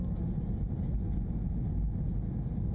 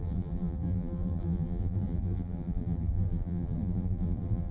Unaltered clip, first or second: first